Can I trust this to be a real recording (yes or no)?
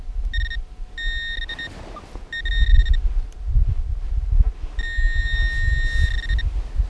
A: yes